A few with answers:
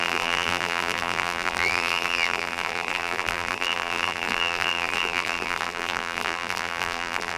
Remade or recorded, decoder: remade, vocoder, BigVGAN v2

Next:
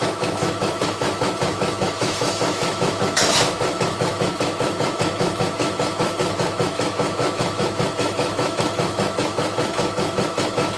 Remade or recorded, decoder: remade, autoencoder, DAC-VAE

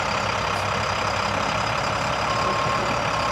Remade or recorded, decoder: recorded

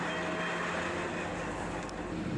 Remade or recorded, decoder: recorded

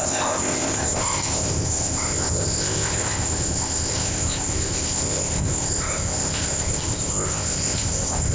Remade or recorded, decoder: remade, codec, ZipCodec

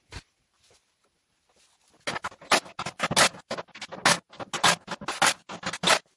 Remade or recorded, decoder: recorded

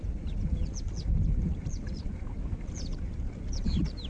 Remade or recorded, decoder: recorded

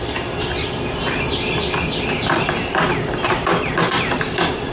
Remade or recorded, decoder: remade, vocoder, BigVGAN v2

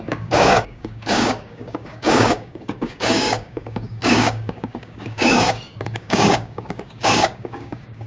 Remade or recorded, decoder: remade, codec, DAC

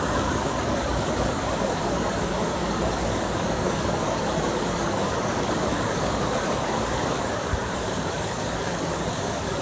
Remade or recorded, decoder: remade, codec, DAC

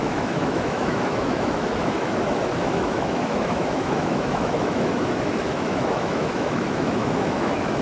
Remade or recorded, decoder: remade, autoencoder, DAC-VAE